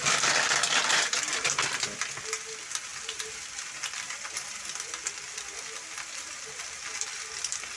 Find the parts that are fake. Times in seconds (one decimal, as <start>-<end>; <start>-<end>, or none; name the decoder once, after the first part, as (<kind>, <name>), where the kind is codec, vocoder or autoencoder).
0.8-1.3 (vocoder, BigVGAN v2); 2.9-6.7